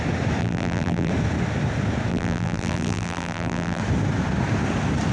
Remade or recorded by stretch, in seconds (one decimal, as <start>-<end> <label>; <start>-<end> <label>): 0.0-0.4 recorded; 0.4-1.1 remade; 1.1-2.1 recorded; 2.1-3.8 remade; 3.8-5.1 recorded